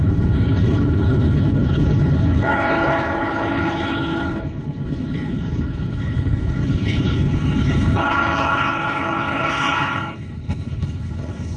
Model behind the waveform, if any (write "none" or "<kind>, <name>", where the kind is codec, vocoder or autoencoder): codec, HILCodec